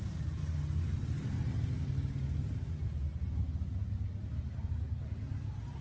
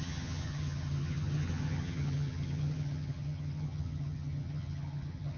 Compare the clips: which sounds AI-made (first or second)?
second